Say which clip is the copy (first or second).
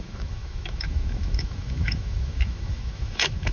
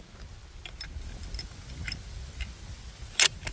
first